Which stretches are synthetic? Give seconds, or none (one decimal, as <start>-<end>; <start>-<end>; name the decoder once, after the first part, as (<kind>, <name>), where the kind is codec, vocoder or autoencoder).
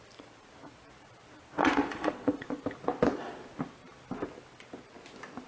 1.6-2.6 (vocoder, Vocos)